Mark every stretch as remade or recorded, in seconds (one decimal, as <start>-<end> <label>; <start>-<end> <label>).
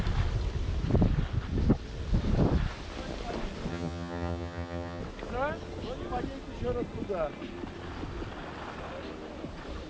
0.0-3.7 recorded; 3.7-5.0 remade; 5.0-9.9 recorded